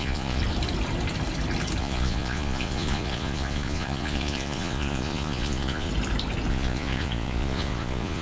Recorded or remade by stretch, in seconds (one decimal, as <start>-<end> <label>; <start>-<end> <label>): 0.0-0.4 remade; 0.4-1.8 recorded; 1.8-5.9 remade; 5.9-6.5 recorded; 6.5-8.2 remade